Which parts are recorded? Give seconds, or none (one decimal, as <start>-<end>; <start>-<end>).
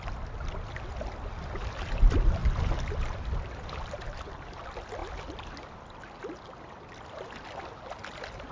0.0-8.5